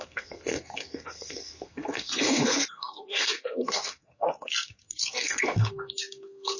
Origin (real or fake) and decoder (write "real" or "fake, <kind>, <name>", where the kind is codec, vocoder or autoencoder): fake, codec, SNAC